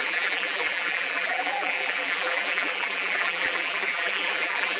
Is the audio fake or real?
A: fake